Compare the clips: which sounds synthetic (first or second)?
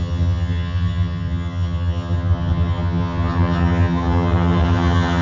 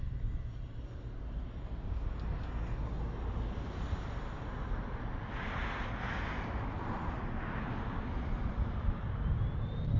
first